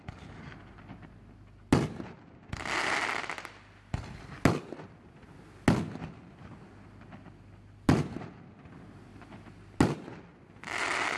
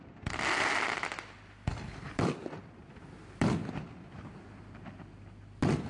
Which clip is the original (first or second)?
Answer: first